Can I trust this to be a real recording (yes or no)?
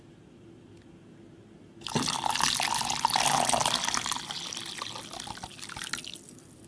yes